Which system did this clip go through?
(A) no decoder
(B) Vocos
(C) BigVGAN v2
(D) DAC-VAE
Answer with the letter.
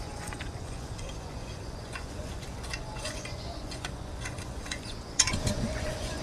B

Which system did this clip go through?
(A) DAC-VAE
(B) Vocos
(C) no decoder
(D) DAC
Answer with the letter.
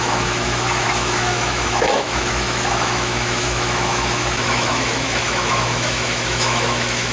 A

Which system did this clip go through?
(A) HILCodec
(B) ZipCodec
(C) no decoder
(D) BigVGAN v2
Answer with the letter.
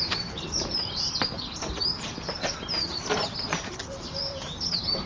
D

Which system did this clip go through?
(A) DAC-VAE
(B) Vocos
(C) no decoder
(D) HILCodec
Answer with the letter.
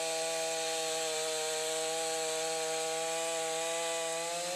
C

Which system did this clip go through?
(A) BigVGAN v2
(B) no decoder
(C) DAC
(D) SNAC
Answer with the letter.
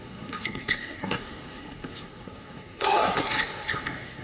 D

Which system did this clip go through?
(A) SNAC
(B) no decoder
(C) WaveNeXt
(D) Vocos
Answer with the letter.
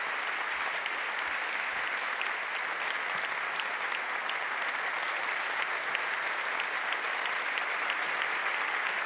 B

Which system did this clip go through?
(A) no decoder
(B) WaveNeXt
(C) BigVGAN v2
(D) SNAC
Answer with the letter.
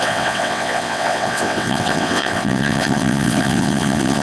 B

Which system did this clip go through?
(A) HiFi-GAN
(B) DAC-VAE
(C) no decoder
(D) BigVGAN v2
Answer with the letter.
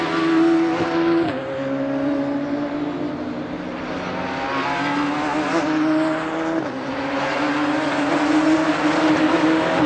C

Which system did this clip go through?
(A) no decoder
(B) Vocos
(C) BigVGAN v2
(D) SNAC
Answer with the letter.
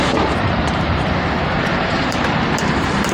C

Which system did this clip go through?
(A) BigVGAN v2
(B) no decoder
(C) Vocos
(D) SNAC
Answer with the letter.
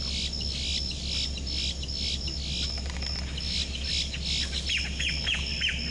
B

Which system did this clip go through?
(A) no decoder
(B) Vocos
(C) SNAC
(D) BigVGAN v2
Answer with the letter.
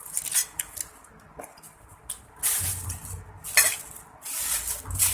A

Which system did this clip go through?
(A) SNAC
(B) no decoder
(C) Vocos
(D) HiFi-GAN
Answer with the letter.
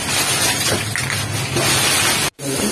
B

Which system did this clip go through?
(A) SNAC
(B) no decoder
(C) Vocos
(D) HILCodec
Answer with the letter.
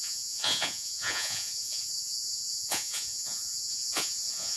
C